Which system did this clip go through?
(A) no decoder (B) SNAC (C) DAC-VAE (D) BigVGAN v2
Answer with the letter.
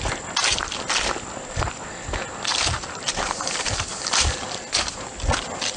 A